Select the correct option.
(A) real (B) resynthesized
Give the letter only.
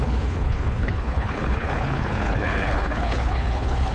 B